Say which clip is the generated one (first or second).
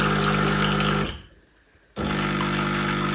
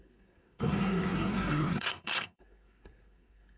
second